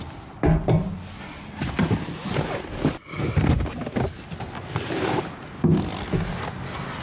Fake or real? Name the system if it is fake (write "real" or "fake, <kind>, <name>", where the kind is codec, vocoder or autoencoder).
real